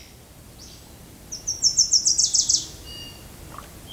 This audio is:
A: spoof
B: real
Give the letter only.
B